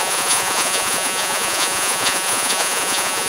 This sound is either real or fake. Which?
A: fake